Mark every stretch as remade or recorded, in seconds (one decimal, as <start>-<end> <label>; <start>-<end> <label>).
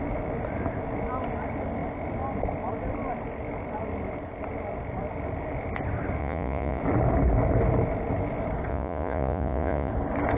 0.0-6.2 recorded; 6.2-6.8 remade; 6.8-8.7 recorded; 8.7-9.9 remade; 9.9-10.4 recorded